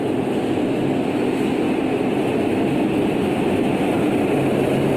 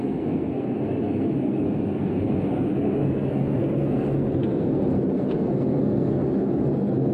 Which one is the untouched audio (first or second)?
first